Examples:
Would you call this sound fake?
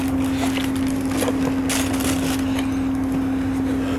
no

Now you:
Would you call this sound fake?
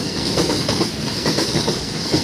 yes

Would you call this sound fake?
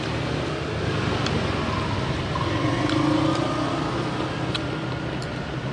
no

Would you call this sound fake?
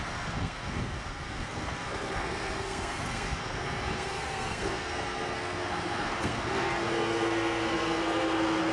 yes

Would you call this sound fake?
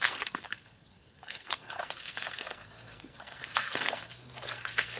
yes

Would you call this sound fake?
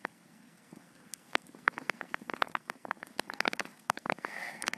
yes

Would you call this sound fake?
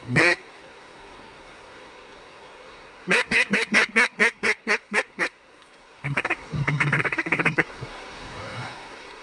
yes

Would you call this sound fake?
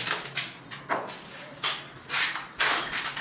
no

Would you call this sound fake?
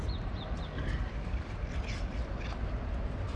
no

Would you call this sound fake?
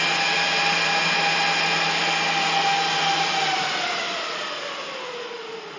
no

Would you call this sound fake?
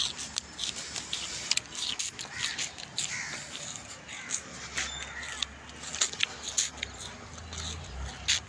no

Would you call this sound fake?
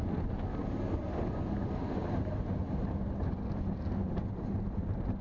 no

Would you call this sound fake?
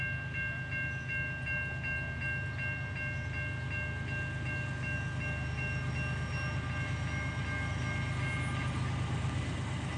no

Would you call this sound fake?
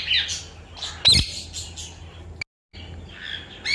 no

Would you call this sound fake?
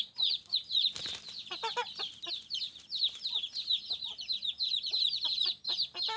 no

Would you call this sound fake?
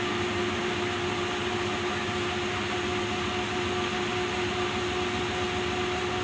no